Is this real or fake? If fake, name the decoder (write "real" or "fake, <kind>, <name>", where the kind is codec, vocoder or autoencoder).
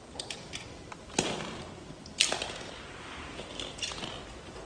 real